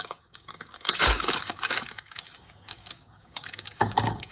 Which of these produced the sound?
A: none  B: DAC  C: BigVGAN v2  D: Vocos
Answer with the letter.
B